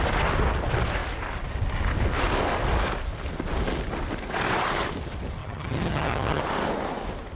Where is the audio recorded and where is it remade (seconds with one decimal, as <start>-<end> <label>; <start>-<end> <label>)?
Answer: 0.0-5.4 recorded; 5.4-6.4 remade; 6.4-7.3 recorded